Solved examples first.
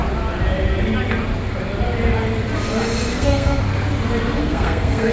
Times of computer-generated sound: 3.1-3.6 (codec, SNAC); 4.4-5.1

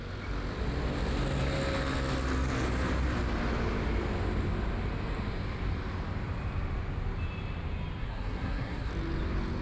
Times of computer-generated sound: 8.0-8.9 (codec, SNAC)

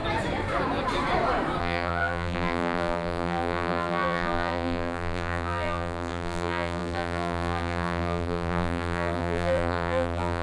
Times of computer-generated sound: 1.6-10.4 (vocoder, BigVGAN v2)

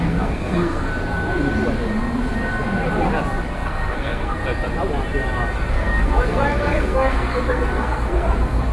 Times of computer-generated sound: 0.0-0.9 (codec, SNAC); 3.4-4.4; 5.7-8.7

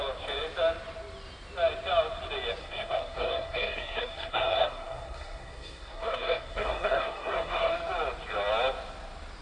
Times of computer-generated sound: 2.6-7.7 (codec, SNAC)

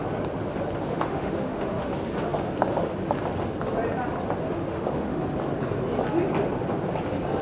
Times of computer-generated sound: 0.9-1.9 (autoencoder, DAC-VAE); 4.7-5.2

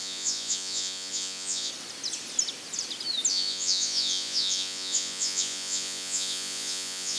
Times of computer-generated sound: 0.0-1.7 (vocoder, Vocos); 3.3-7.2

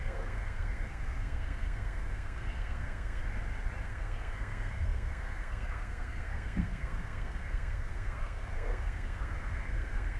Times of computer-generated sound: 0.0-3.2 (codec, SNAC); 3.8-10.2